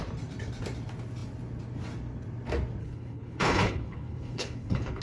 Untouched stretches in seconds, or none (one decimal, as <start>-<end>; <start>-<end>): 0.0-2.8